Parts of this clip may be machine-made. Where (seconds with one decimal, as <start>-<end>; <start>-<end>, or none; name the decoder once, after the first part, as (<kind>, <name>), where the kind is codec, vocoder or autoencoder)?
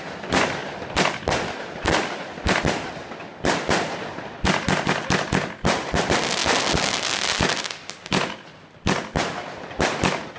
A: none